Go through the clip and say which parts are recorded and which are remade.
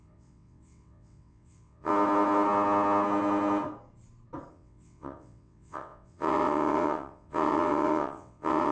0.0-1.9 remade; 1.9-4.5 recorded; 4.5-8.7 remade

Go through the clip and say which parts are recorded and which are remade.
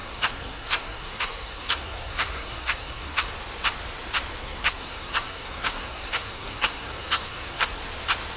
0.0-3.3 remade; 3.3-4.4 recorded; 4.4-7.8 remade; 7.8-8.4 recorded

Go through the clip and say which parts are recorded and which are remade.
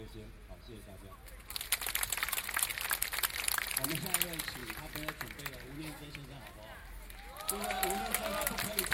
0.0-8.9 recorded